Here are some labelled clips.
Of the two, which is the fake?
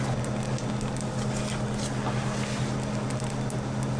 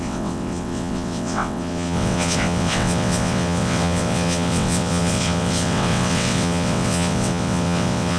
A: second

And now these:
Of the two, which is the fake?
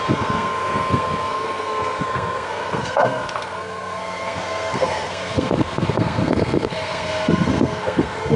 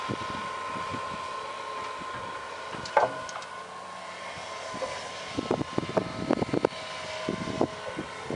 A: first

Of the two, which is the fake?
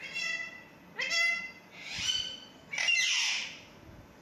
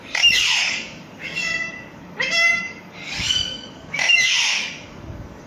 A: second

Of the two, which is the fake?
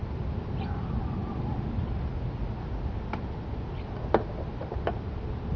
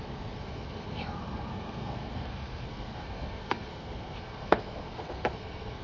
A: second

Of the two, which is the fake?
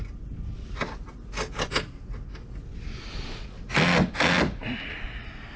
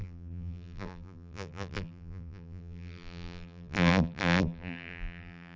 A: second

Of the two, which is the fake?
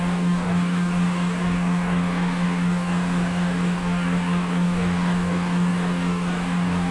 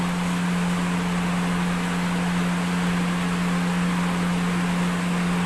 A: first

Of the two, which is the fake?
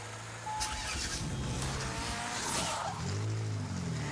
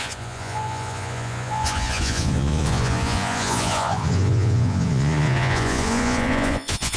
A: second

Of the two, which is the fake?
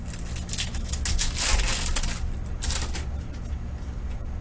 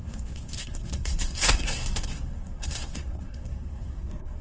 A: second